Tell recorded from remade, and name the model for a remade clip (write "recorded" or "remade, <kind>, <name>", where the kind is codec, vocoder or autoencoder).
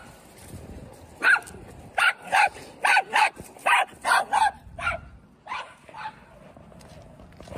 recorded